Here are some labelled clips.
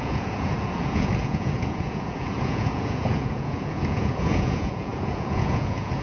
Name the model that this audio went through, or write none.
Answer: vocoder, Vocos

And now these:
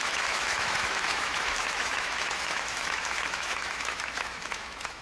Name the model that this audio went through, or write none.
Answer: autoencoder, DAC-VAE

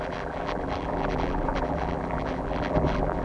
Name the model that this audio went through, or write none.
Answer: vocoder, BigVGAN v2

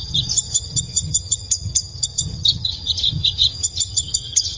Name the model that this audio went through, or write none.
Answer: vocoder, HiFi-GAN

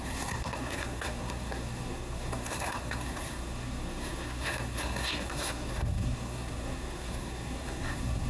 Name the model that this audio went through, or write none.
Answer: codec, SNAC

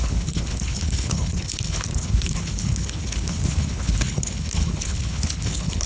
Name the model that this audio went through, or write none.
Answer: codec, HILCodec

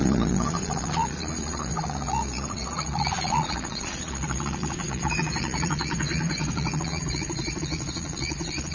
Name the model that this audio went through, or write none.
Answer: vocoder, Vocos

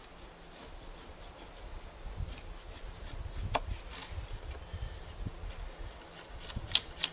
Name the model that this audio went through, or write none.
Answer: none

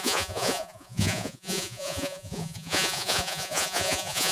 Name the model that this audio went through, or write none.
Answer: vocoder, Vocos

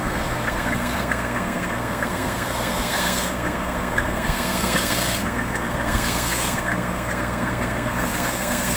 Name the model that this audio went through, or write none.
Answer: codec, SNAC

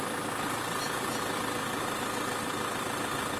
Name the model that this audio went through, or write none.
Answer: none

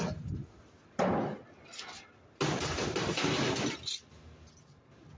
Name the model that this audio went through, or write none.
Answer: none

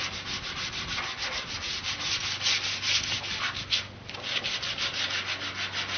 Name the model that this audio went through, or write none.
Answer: none